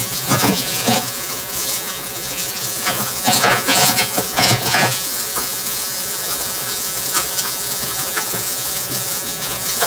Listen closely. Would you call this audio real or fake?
fake